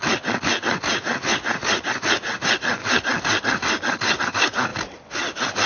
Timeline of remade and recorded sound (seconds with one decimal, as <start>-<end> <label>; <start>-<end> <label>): 0.0-5.7 recorded